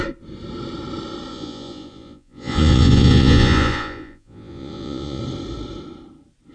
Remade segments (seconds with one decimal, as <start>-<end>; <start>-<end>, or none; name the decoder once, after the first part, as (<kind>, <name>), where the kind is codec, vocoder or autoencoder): 1.3-5.2 (vocoder, Vocos)